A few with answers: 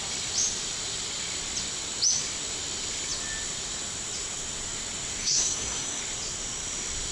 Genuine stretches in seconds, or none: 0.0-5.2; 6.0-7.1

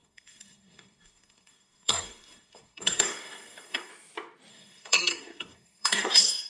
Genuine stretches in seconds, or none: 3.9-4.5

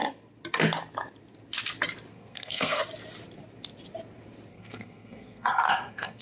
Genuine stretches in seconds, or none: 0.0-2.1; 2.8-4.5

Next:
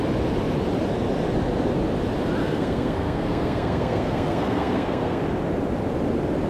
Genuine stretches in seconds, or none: 0.0-2.4; 5.2-6.5

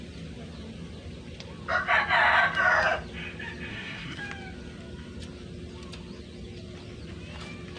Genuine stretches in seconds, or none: 0.0-3.7; 4.2-7.8

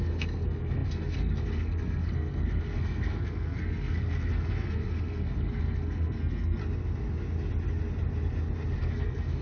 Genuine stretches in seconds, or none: 6.6-8.8

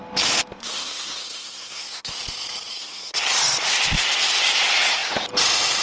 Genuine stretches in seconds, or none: 0.0-0.6; 2.2-2.7; 3.2-5.8